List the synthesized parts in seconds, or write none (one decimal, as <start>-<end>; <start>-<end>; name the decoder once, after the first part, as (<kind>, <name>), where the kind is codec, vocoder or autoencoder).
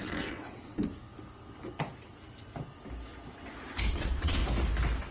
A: 0.0-0.8 (vocoder, WaveNeXt); 3.9-4.4